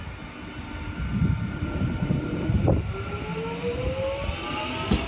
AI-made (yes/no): no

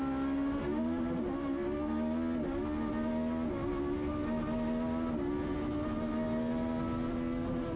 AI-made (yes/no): no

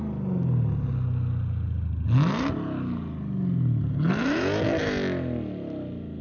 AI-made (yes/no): no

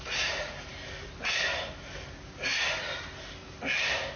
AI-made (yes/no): no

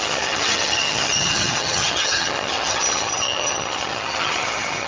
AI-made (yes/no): yes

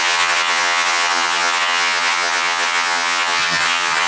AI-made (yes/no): yes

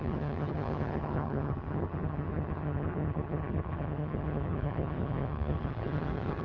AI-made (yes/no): yes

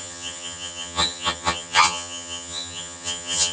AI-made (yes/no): yes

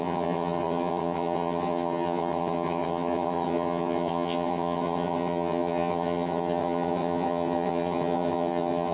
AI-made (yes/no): yes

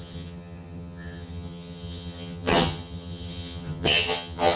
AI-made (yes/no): yes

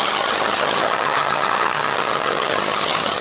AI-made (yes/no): yes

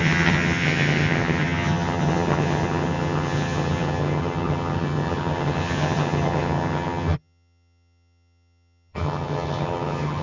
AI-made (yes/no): yes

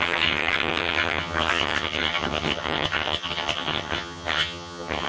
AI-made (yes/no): yes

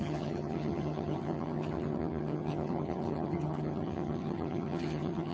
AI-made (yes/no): yes